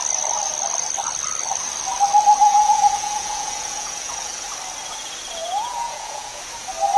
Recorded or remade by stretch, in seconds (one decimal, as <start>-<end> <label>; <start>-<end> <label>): 0.0-2.4 recorded; 2.4-4.5 remade; 4.5-5.4 recorded; 5.4-6.4 remade; 6.4-7.0 recorded

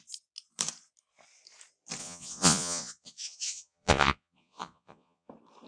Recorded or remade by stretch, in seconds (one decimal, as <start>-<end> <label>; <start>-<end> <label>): 0.0-2.0 recorded; 2.0-5.3 remade; 5.3-5.7 recorded

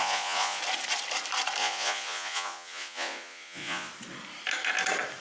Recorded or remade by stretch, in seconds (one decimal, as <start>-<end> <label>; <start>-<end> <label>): 0.0-0.6 remade; 0.6-1.6 recorded; 1.6-3.9 remade; 3.9-5.2 recorded

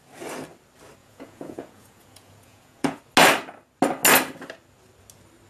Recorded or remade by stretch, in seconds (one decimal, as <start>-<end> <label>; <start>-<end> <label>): 0.0-1.0 recorded; 1.0-3.0 remade; 3.0-5.5 recorded

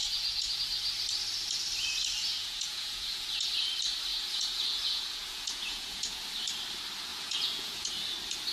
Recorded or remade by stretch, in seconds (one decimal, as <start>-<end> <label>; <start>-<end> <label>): 0.0-0.6 remade; 0.6-2.2 recorded; 2.2-3.5 remade; 3.5-4.1 recorded; 4.1-6.2 remade; 6.2-7.1 recorded; 7.1-7.9 remade; 7.9-8.5 recorded